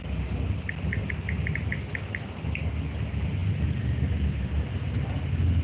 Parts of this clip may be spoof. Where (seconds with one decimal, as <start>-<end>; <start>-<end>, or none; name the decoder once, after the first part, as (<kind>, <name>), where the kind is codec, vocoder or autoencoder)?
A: none